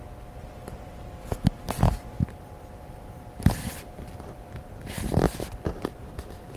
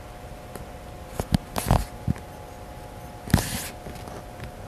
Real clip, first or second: second